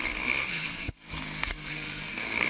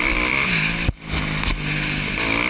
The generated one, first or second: first